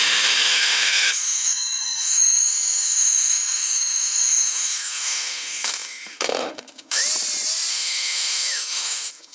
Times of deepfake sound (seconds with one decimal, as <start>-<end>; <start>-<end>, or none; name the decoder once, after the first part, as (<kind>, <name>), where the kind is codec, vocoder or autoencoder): 0.0-7.0 (autoencoder, DAC-VAE); 7.7-9.3